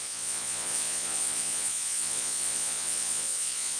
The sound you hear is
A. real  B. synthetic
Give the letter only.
B